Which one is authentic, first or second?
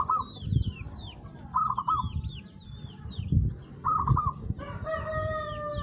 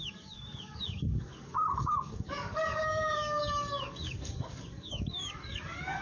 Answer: first